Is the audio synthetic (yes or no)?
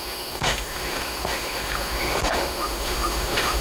yes